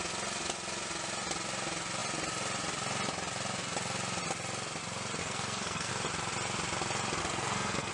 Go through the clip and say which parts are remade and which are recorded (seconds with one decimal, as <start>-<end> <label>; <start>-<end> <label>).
0.0-5.2 recorded; 5.2-5.9 remade; 5.9-7.2 recorded; 7.2-7.9 remade